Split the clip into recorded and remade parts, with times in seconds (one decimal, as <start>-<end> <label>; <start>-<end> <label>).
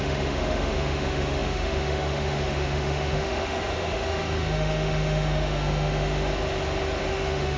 0.0-6.3 remade; 6.3-7.1 recorded; 7.1-7.6 remade